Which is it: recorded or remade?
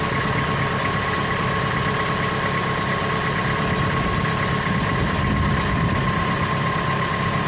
recorded